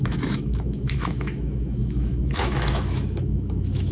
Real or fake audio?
fake